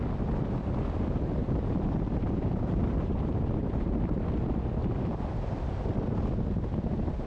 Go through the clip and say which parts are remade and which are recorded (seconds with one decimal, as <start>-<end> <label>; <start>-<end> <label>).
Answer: 0.0-1.4 recorded; 1.4-4.2 remade; 4.2-4.8 recorded; 4.8-5.8 remade; 5.8-7.3 recorded